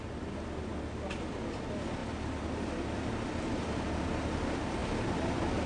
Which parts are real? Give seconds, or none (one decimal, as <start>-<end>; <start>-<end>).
0.0-5.7